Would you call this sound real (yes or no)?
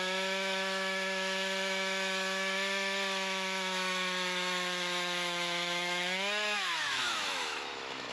no